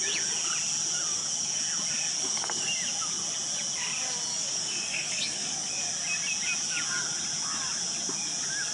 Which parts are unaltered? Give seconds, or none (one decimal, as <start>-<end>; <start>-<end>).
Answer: 0.0-1.1; 1.6-2.1; 2.7-4.3; 5.7-8.7

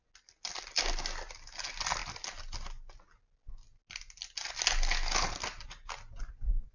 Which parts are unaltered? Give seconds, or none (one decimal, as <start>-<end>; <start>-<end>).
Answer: 0.0-6.7

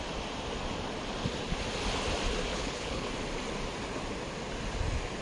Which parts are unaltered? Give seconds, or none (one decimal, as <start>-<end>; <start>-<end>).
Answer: 0.0-2.5; 3.1-5.2

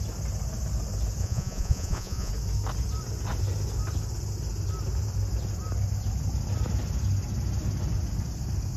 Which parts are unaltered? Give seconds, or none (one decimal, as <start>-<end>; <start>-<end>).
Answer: 0.0-1.2; 2.3-8.8